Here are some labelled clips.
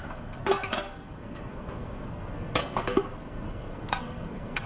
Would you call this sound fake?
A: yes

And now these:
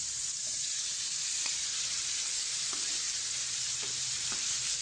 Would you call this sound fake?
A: yes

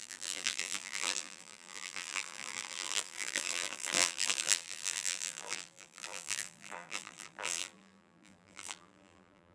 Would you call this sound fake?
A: yes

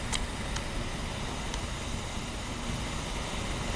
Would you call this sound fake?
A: no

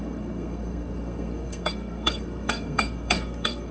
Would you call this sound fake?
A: yes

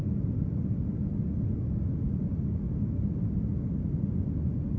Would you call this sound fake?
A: no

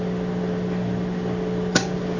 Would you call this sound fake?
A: no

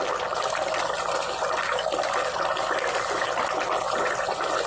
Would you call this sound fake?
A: no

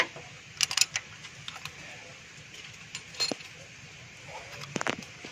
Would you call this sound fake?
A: no